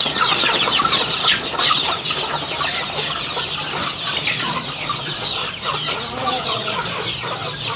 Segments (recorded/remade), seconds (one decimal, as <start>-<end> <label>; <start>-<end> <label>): 0.0-1.8 remade; 1.8-4.3 recorded; 4.3-5.4 remade; 5.4-6.3 recorded; 6.3-6.8 remade; 6.8-7.8 recorded